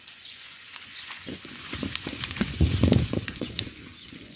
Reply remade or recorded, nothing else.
remade